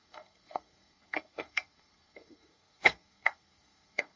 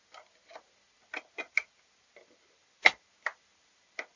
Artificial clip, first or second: first